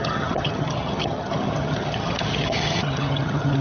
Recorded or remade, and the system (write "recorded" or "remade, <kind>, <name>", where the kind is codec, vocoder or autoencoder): remade, vocoder, HiFi-GAN